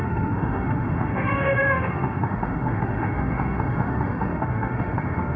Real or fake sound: fake